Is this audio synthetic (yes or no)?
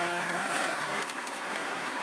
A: yes